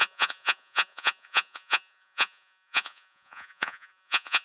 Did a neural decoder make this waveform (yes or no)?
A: yes